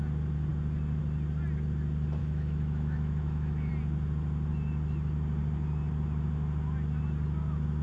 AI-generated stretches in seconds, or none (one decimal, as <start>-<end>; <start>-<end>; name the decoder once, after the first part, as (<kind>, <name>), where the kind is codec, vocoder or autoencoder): 2.2-3.7 (autoencoder, DAC-VAE)